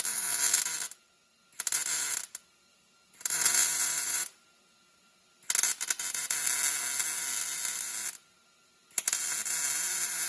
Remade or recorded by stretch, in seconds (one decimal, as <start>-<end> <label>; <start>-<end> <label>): 0.0-2.7 recorded; 2.7-5.0 remade; 5.0-10.3 recorded